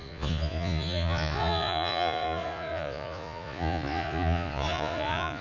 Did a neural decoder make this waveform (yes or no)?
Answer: yes